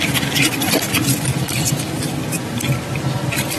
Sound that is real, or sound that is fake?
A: real